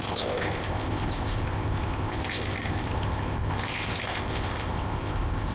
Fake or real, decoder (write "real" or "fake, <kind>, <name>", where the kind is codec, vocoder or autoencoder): fake, codec, ZipCodec